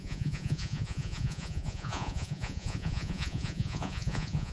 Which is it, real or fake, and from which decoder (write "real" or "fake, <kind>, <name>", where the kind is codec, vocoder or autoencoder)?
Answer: fake, vocoder, Vocos